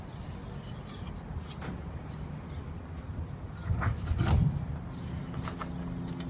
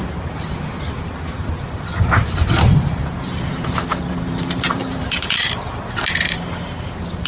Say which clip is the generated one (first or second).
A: second